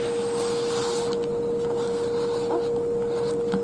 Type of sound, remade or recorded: recorded